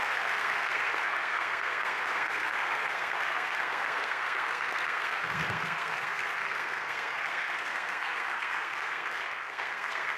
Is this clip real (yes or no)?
no